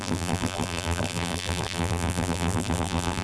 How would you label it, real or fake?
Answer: fake